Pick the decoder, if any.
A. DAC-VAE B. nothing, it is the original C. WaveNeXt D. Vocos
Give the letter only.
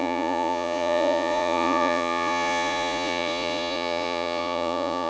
D